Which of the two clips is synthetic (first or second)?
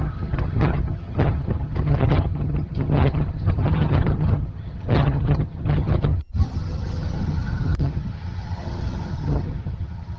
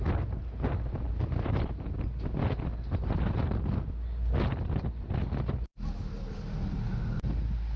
first